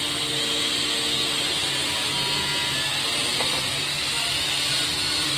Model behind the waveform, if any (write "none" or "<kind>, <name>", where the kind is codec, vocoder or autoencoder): none